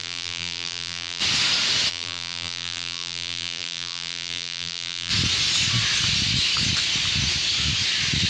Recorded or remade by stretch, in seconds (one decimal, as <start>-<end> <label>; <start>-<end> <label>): 0.0-1.2 remade; 1.2-1.9 recorded; 1.9-5.1 remade; 5.1-8.3 recorded